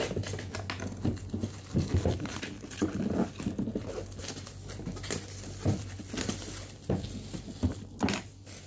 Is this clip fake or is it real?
real